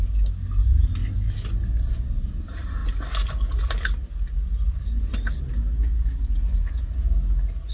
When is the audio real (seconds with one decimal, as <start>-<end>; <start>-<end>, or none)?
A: 0.0-7.7